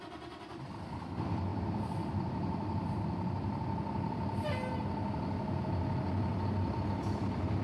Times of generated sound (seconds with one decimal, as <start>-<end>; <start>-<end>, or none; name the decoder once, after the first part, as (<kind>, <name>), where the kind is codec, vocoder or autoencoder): none